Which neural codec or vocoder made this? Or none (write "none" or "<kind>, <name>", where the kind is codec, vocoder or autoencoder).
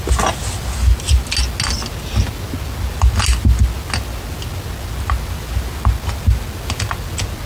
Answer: none